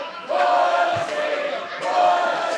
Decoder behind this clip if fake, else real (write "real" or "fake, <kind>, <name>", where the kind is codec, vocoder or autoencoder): fake, autoencoder, DAC-VAE